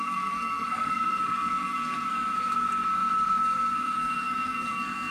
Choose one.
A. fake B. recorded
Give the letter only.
A